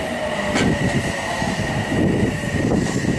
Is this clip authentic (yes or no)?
yes